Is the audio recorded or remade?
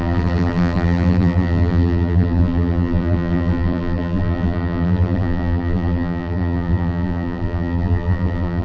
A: remade